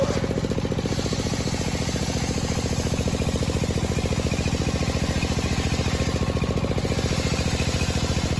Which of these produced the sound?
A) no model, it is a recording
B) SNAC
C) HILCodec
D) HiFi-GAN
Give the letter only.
A